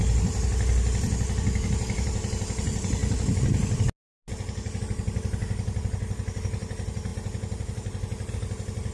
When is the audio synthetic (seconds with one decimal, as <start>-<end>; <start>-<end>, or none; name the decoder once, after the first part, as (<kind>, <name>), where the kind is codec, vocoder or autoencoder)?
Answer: none